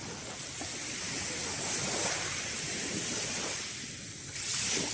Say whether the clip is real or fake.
real